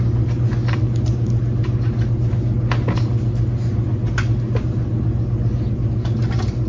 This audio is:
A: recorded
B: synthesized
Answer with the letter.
A